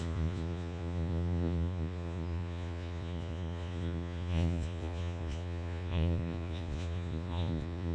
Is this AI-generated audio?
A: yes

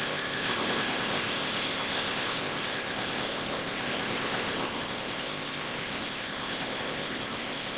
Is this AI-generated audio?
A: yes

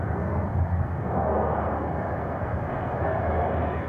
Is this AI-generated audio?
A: yes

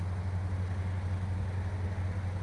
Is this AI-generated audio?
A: no